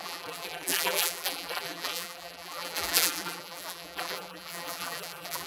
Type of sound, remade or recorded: remade